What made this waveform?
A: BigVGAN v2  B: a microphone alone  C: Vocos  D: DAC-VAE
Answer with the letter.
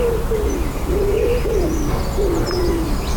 B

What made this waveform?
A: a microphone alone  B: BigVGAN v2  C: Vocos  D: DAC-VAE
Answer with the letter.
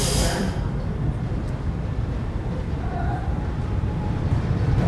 B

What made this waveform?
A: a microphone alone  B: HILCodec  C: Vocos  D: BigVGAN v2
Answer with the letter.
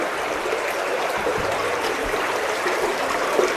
D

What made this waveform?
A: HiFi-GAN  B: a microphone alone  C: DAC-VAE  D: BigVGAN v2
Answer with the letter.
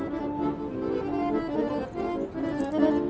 B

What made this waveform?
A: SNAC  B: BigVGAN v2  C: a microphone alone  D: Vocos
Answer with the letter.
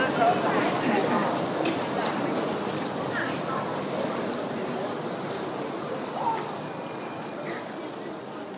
C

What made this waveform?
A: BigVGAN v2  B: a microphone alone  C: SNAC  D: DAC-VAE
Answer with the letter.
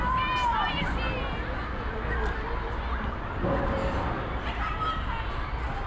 B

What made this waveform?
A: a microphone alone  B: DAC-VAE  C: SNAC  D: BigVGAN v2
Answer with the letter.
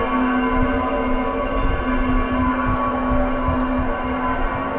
A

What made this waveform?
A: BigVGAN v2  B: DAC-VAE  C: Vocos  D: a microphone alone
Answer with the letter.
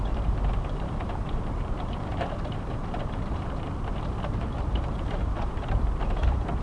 A